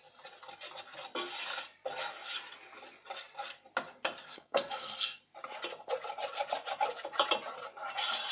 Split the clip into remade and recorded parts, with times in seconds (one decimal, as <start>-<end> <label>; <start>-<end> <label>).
0.0-4.3 recorded; 4.3-5.2 remade; 5.2-8.3 recorded